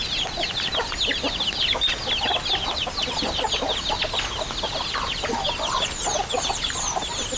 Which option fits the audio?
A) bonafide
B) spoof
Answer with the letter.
A